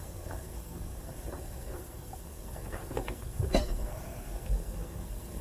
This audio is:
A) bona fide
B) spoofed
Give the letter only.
B